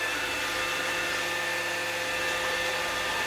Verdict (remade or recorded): recorded